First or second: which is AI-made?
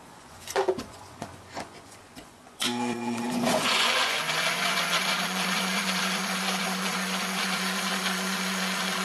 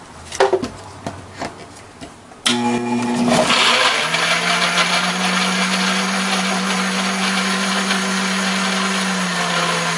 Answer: first